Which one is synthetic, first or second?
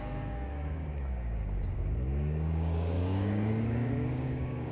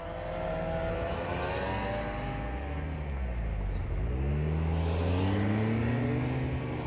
first